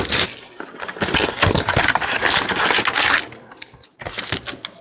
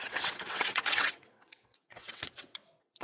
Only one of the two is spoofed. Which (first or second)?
second